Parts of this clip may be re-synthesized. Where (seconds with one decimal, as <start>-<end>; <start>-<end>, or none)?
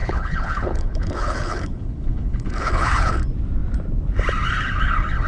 0.0-3.2